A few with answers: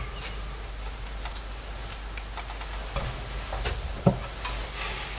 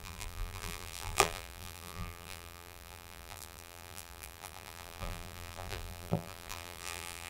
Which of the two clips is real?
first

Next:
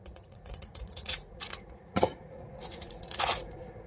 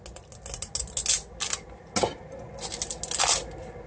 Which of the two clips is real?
second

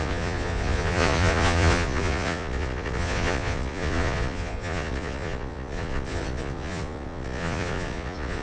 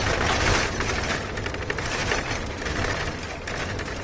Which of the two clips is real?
second